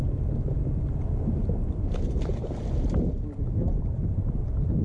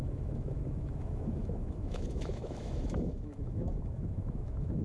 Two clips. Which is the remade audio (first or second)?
second